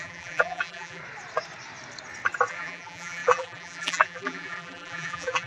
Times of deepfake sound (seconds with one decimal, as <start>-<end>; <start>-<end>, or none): 0.0-1.0; 2.5-5.5